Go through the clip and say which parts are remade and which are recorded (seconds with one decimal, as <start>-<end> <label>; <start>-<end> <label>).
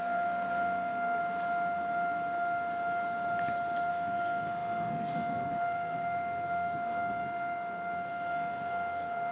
0.0-1.2 remade; 1.2-3.9 recorded; 3.9-9.3 remade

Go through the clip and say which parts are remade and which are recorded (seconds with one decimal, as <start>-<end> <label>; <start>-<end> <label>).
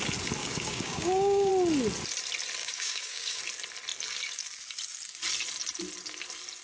0.0-0.4 recorded; 0.4-1.5 remade; 1.5-2.6 recorded; 2.6-3.4 remade; 3.4-6.6 recorded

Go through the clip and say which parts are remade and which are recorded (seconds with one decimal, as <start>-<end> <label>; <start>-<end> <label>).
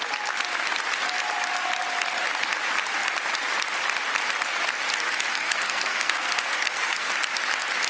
0.0-5.3 recorded; 5.3-7.1 remade; 7.1-7.9 recorded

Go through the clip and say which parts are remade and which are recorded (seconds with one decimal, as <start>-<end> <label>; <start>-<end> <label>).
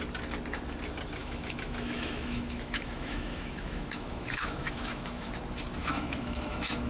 0.0-1.2 recorded; 1.2-5.3 remade; 5.3-5.8 recorded; 5.8-6.9 remade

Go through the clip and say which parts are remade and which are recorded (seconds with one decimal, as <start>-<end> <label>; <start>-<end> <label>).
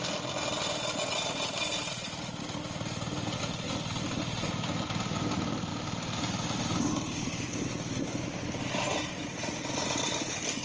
0.0-5.7 recorded; 5.7-8.0 remade; 8.0-10.6 recorded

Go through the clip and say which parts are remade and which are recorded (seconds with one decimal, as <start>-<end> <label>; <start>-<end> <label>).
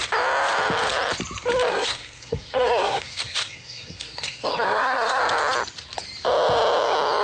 0.0-1.7 recorded; 1.7-5.2 remade; 5.2-7.2 recorded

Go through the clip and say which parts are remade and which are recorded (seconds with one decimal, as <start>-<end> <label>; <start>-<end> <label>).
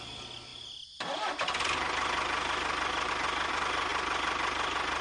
0.0-5.0 recorded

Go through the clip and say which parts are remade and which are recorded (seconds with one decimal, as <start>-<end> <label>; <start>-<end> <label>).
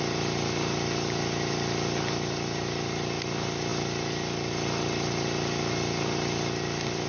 0.0-7.1 recorded